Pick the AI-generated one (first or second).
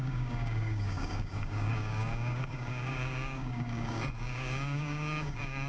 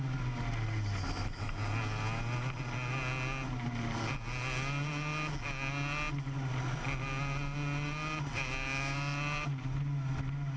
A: first